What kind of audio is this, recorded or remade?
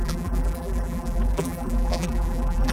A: remade